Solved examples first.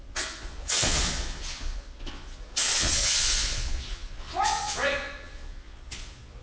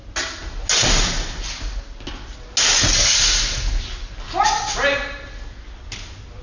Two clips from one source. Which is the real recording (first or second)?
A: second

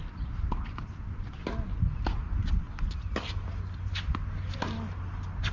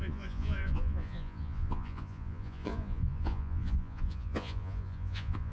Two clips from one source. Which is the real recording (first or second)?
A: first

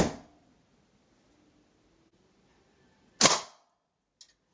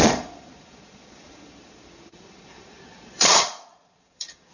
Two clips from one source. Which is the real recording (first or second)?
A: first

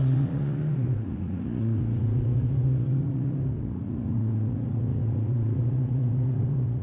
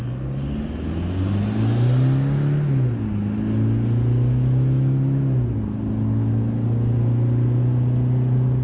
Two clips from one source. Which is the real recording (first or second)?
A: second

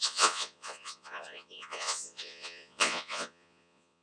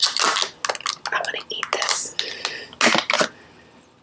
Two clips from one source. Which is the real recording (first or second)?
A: second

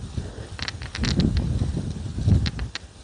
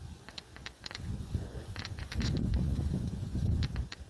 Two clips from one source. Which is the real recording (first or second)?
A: first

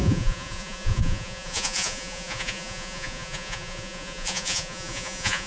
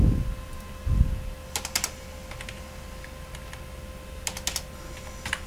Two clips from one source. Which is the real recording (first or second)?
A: second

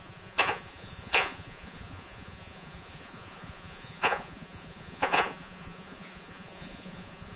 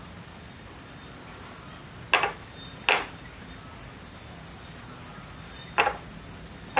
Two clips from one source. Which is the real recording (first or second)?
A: second